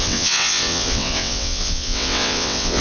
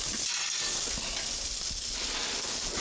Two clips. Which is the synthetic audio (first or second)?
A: first